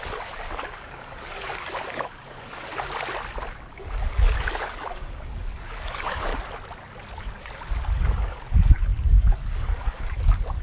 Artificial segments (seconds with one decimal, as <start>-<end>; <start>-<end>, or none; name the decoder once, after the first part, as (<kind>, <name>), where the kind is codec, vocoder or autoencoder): 0.0-2.7 (codec, DAC); 3.8-6.3; 7.2-10.6